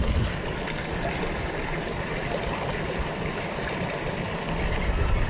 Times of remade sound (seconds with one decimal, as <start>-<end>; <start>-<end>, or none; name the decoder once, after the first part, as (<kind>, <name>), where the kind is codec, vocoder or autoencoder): 1.6-4.8 (vocoder, BigVGAN v2)